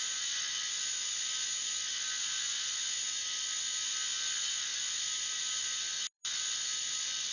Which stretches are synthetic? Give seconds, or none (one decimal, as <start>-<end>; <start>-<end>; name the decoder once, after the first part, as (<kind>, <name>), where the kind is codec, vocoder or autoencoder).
none